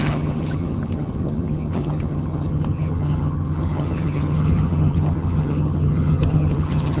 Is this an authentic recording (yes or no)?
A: no